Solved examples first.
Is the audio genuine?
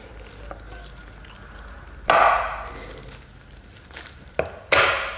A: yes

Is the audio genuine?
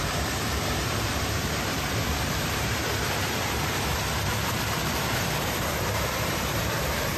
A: no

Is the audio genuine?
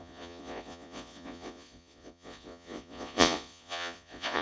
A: no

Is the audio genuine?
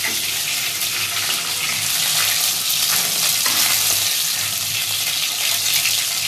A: yes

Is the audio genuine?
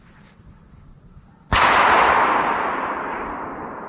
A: yes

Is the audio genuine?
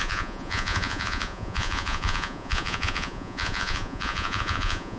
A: no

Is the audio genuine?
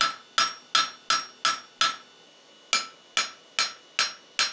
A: yes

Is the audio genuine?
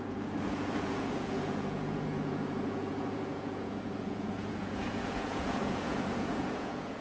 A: no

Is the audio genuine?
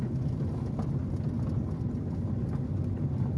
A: yes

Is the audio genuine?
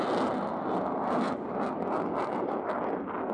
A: yes